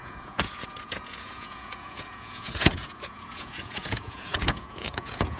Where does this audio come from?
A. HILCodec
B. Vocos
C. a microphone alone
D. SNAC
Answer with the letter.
B